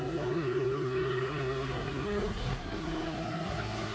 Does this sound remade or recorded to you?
remade